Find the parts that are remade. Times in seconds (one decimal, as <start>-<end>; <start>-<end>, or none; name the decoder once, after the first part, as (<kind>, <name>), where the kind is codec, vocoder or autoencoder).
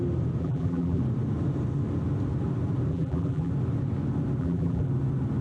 0.4-1.0 (vocoder, BigVGAN v2); 2.9-3.5; 4.4-4.9